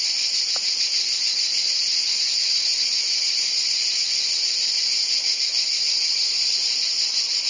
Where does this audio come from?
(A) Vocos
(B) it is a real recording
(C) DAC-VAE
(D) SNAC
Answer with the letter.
B